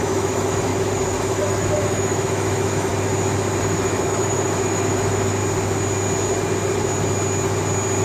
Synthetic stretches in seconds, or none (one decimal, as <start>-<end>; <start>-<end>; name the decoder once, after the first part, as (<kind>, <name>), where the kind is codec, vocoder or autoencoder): 0.0-0.7 (autoencoder, DAC-VAE); 1.2-2.9; 3.6-5.4